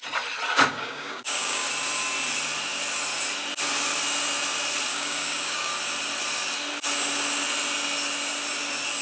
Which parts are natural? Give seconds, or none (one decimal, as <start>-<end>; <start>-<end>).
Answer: 0.0-0.7; 1.7-4.9; 5.7-9.0